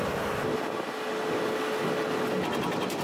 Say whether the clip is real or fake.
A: real